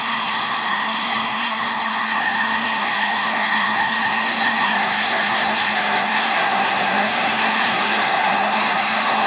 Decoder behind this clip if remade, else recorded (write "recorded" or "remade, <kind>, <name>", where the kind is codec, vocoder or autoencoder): remade, codec, SNAC